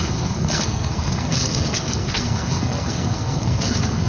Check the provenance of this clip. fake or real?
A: fake